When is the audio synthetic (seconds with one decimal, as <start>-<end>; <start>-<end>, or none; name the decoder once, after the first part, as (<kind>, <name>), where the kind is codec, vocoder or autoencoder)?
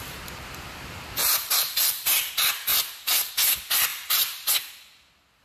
1.2-2.3 (vocoder, BigVGAN v2); 2.7-3.3; 3.9-4.5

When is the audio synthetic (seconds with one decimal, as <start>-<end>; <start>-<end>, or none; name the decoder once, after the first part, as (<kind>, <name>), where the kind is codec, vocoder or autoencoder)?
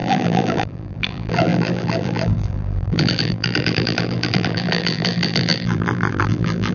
0.0-6.7 (vocoder, BigVGAN v2)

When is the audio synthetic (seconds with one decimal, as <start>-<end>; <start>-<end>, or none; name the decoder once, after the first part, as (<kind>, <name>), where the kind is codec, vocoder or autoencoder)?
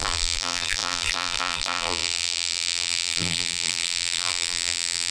0.0-5.1 (vocoder, BigVGAN v2)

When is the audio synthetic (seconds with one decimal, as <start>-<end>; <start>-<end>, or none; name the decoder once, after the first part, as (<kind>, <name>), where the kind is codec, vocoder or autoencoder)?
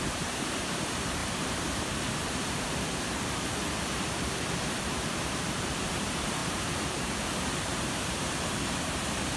0.0-1.2 (vocoder, BigVGAN v2); 2.0-9.4